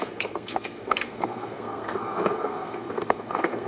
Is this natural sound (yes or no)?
no